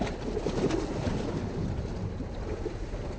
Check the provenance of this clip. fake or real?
real